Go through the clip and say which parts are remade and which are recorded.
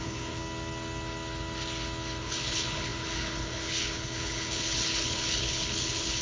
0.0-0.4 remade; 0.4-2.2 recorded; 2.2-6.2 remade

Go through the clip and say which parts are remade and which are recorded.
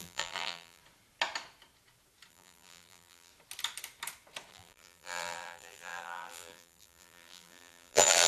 0.0-0.8 remade; 0.8-2.3 recorded; 2.3-3.3 remade; 3.3-4.5 recorded; 4.5-8.3 remade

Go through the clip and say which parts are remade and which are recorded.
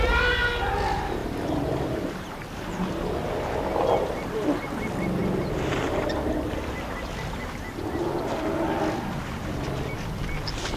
0.0-1.2 recorded; 1.2-2.9 remade; 2.9-10.8 recorded